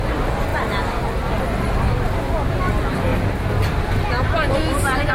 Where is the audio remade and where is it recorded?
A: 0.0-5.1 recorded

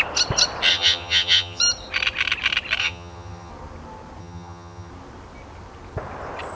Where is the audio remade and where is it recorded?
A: 0.0-0.7 recorded; 0.7-1.6 remade; 1.6-2.8 recorded; 2.8-3.5 remade; 3.5-4.2 recorded; 4.2-4.9 remade; 4.9-6.5 recorded

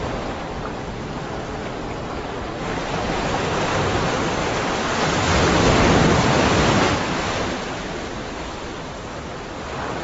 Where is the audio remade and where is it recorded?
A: 0.0-10.0 recorded

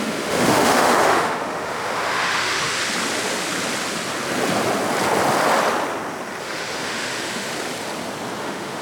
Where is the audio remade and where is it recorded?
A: 0.0-2.8 remade; 2.8-6.4 recorded; 6.4-7.5 remade; 7.5-8.4 recorded; 8.4-8.8 remade